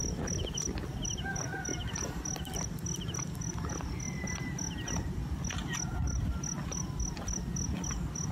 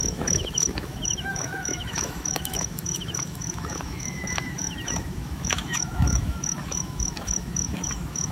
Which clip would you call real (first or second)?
first